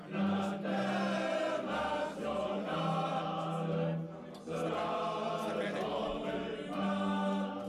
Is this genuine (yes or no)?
yes